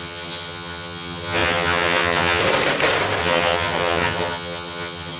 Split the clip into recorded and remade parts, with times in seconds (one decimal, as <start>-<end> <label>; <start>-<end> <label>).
0.0-2.4 remade; 2.4-3.2 recorded; 3.2-5.2 remade